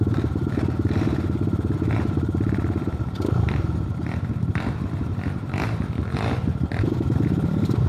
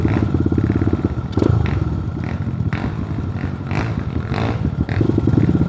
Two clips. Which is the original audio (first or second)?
second